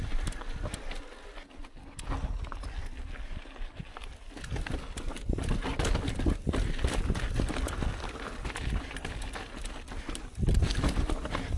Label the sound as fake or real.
real